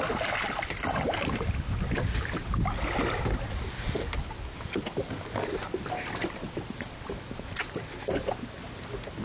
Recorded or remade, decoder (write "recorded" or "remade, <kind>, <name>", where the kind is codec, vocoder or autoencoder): recorded